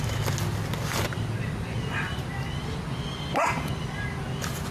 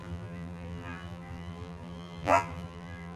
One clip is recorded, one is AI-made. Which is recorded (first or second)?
first